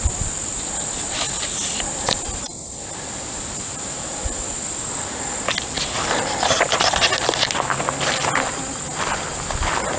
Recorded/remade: recorded